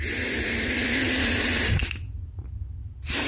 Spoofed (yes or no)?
no